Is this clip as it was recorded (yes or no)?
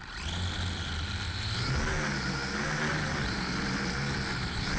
yes